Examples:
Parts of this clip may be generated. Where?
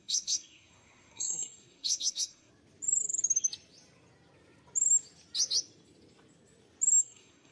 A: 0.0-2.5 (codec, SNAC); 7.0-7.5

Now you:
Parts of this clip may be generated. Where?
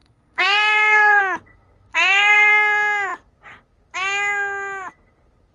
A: 0.0-1.2 (codec, SNAC); 1.9-2.5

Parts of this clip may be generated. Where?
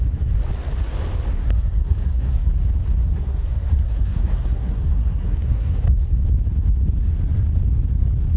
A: 1.3-2.5 (codec, SNAC); 3.0-6.2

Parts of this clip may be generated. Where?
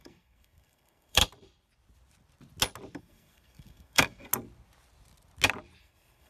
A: 0.0-1.2 (codec, SNAC); 3.0-4.3; 5.8-6.3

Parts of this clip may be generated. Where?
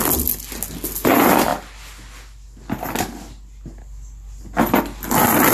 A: none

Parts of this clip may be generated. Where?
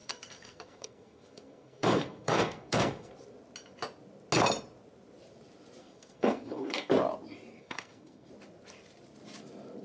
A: 0.0-3.1 (codec, SNAC); 5.8-6.9; 7.5-8.3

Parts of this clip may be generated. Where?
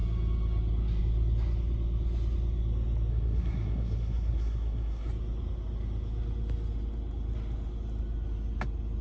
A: 3.1-5.1 (codec, SNAC)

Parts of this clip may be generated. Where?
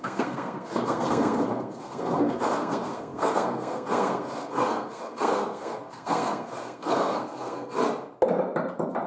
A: 0.0-7.8 (codec, SNAC)